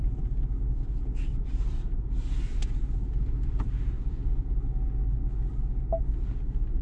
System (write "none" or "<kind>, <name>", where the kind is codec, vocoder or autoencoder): none